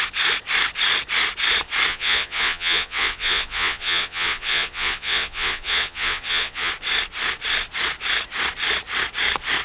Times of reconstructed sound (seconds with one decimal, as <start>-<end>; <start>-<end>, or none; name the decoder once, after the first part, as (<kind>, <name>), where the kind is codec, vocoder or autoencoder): 1.9-6.7 (vocoder, Vocos)